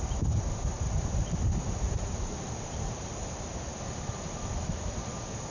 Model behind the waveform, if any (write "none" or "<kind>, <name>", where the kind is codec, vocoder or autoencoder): vocoder, BigVGAN v2